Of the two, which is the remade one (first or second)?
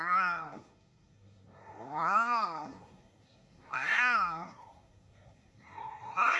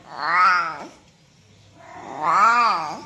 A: first